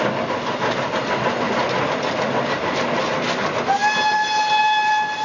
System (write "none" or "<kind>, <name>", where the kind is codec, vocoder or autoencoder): none